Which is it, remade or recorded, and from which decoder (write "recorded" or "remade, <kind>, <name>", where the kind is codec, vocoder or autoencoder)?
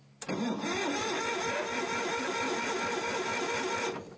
recorded